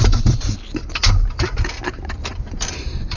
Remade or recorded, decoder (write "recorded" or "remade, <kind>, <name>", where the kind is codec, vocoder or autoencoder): recorded